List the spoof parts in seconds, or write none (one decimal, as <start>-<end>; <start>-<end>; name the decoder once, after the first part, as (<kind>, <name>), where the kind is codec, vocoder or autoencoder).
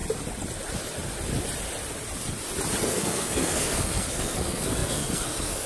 2.8-5.7 (codec, SNAC)